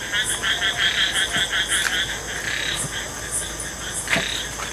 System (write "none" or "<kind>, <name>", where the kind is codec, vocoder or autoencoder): none